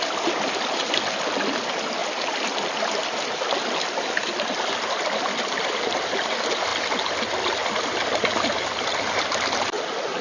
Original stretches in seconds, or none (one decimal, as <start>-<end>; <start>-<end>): 0.0-10.2

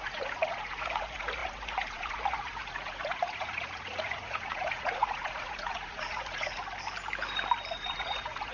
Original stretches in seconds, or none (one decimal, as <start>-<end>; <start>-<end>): 6.6-7.7

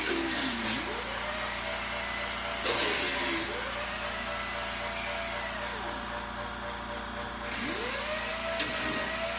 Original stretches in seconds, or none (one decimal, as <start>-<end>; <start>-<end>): 0.0-9.4

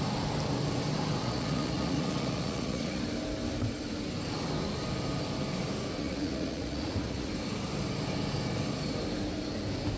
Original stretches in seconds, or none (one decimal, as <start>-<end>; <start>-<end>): 0.0-1.2; 3.0-6.0; 7.3-10.0

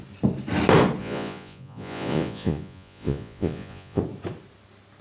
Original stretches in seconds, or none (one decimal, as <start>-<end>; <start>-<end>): 0.0-1.0; 4.0-5.0

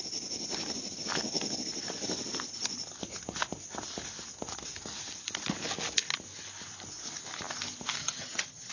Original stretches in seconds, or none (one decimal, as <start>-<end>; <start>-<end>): 0.0-8.0